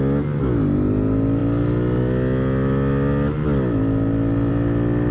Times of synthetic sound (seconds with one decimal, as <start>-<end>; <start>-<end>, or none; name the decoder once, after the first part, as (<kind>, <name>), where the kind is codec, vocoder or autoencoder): none